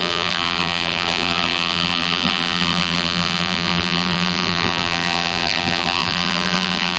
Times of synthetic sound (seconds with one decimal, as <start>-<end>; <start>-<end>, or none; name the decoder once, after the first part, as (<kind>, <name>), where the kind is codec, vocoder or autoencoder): 0.0-7.0 (vocoder, BigVGAN v2)